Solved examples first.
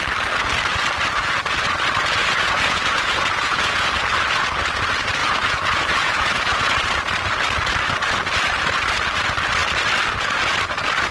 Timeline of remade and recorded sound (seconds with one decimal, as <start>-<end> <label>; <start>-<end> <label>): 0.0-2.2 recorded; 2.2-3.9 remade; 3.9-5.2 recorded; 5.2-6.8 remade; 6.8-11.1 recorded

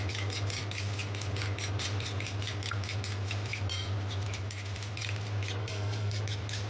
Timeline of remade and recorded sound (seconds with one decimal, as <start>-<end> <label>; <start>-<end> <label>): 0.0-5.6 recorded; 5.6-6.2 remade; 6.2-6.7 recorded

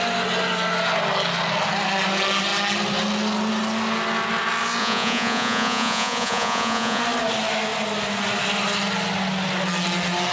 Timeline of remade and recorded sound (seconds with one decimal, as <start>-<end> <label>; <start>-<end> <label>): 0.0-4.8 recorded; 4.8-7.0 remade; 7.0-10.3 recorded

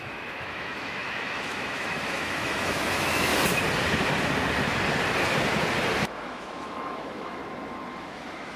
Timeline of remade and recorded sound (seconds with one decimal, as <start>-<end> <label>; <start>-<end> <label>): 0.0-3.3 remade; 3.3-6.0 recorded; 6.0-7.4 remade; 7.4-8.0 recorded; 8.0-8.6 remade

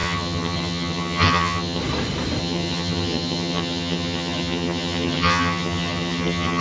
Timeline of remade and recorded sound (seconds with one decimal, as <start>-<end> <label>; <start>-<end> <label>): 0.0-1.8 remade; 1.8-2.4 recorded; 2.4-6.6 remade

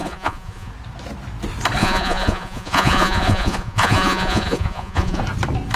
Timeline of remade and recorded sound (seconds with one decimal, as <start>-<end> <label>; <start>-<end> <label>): 0.0-0.7 remade; 0.7-1.8 recorded; 1.8-5.2 remade; 5.2-5.8 recorded

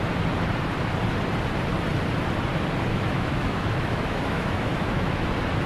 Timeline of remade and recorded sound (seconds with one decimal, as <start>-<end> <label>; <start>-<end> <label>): 0.0-2.9 recorded; 2.9-5.3 remade; 5.3-5.7 recorded